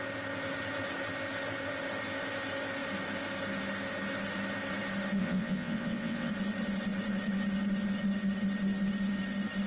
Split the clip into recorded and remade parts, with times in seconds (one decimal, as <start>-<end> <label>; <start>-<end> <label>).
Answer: 0.0-5.2 recorded; 5.2-6.3 remade; 6.3-9.7 recorded